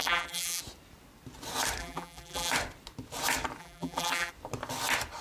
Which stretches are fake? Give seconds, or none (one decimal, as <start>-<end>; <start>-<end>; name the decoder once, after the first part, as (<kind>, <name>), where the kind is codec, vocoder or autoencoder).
0.0-0.6 (vocoder, BigVGAN v2); 1.8-2.5; 3.6-4.3